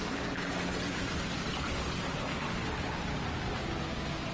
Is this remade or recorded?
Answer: recorded